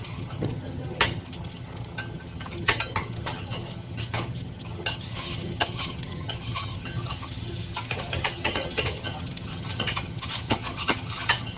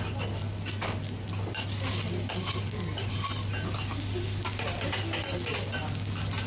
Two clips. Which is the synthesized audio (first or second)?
first